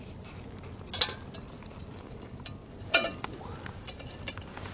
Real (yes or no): yes